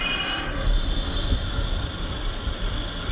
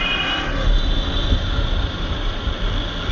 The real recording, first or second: second